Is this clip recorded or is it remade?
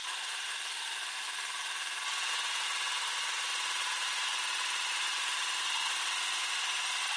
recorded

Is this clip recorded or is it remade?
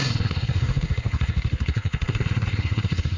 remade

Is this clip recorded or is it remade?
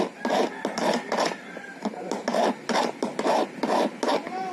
recorded